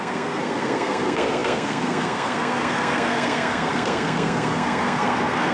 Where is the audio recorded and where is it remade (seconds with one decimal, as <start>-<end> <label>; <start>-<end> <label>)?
0.0-5.5 remade